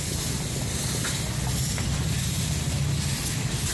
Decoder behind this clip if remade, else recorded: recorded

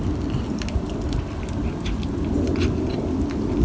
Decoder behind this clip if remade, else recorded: recorded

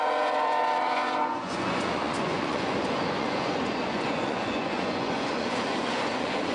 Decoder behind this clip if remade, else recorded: remade, vocoder, Vocos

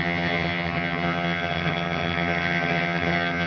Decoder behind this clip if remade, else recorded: remade, vocoder, HiFi-GAN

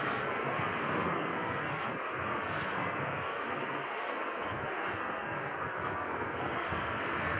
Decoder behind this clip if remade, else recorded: remade, codec, SNAC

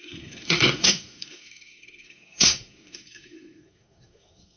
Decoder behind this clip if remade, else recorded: remade, codec, SNAC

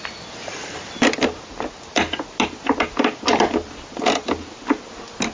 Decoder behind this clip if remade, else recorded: recorded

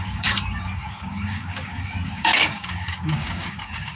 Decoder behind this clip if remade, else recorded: remade, codec, DAC